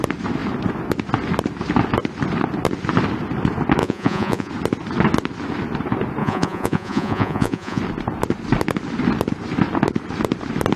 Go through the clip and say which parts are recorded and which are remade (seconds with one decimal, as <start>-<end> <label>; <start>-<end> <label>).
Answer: 0.0-3.8 recorded; 3.8-4.5 remade; 4.5-6.2 recorded; 6.2-7.8 remade; 7.8-10.8 recorded